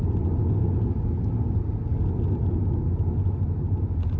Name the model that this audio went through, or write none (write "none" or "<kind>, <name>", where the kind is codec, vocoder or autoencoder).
none